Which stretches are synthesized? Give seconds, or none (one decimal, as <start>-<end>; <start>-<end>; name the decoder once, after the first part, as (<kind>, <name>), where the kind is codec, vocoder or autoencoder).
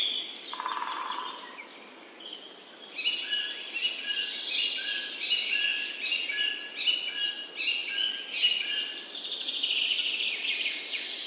none